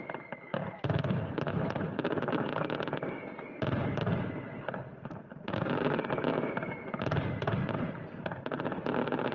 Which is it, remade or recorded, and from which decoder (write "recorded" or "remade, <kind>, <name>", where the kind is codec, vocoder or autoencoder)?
recorded